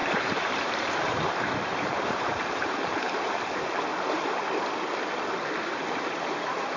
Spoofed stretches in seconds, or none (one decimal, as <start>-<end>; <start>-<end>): 0.0-3.6